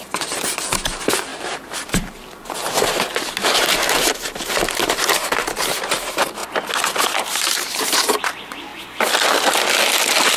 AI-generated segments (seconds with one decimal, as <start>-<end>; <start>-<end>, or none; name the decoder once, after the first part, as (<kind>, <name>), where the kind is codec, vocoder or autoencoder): 0.0-6.4 (vocoder, BigVGAN v2); 6.9-8.7